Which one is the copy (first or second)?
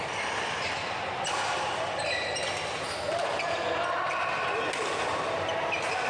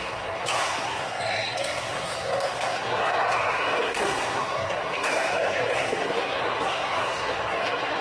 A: second